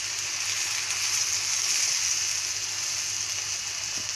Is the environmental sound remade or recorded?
recorded